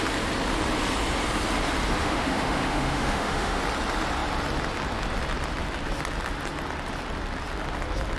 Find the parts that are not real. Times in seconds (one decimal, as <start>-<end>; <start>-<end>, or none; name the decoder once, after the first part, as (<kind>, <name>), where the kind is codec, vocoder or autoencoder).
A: 2.0-3.6 (autoencoder, DAC-VAE)